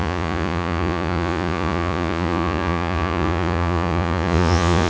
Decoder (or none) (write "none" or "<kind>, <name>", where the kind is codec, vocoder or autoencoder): vocoder, Vocos